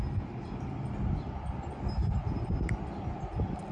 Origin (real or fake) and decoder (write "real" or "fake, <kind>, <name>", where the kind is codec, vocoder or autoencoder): real